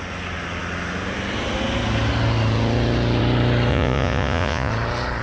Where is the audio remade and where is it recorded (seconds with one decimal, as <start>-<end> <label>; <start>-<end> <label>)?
0.0-3.7 recorded; 3.7-4.7 remade; 4.7-5.2 recorded